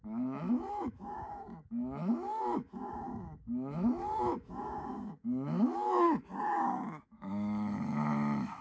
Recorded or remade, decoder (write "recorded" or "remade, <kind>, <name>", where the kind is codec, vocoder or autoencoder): remade, autoencoder, DAC-VAE